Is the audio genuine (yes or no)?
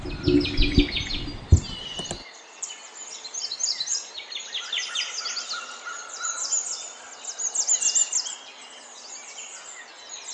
yes